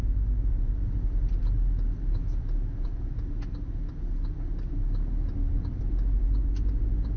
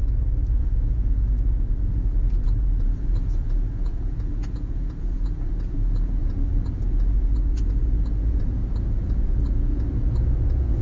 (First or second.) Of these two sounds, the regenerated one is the second